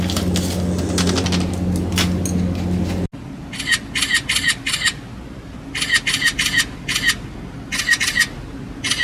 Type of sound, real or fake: real